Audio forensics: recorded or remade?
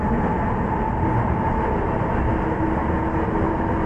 recorded